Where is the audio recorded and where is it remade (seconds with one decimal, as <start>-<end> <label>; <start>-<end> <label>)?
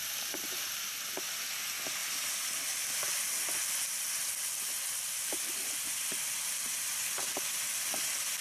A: 0.0-2.0 recorded; 2.0-6.3 remade; 6.3-8.4 recorded